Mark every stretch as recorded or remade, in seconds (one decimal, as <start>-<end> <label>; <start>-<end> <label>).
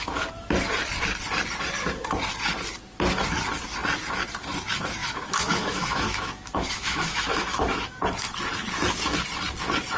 0.0-5.0 recorded; 5.0-8.0 remade; 8.0-10.0 recorded